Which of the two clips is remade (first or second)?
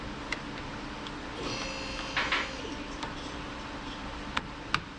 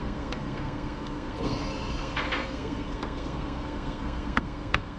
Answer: second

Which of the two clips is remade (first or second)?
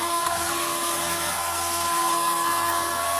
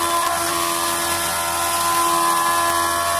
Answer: first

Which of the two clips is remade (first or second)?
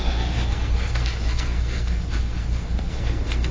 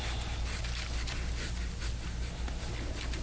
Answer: first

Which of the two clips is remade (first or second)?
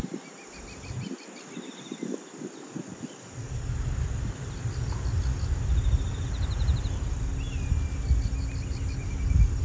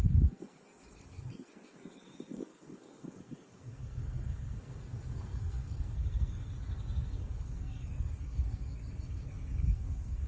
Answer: second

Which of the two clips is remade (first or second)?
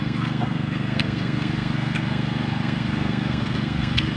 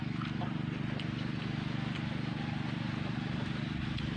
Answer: first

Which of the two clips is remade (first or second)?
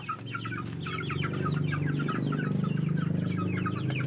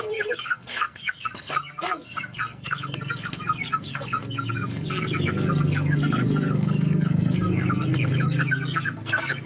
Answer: second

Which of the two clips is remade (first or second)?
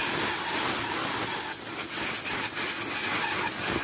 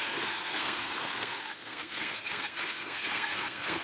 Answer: second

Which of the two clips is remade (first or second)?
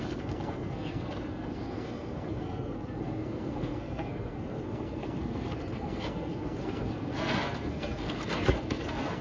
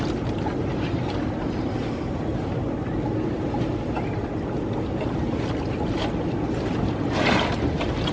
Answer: first